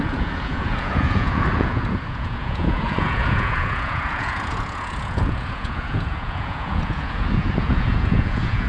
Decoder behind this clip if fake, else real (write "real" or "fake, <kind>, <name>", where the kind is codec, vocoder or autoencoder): fake, vocoder, Vocos